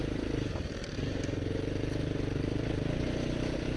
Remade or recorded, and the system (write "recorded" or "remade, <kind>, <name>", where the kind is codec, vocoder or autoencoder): recorded